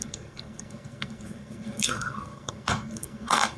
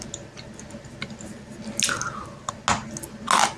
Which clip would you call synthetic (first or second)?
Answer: first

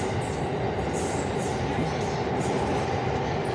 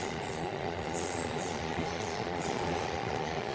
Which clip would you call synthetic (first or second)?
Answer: second